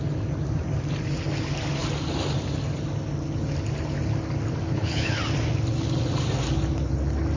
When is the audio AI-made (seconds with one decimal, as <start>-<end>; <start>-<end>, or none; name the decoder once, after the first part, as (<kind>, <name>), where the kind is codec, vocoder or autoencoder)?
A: 4.6-5.2 (codec, HILCodec)